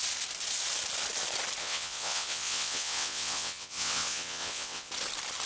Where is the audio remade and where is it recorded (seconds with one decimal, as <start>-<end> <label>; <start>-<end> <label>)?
0.0-1.6 recorded; 1.6-4.9 remade; 4.9-5.5 recorded